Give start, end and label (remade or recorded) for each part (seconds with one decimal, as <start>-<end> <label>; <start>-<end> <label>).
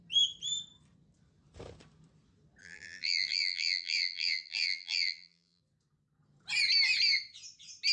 0.0-2.6 recorded; 2.6-5.6 remade; 5.6-7.9 recorded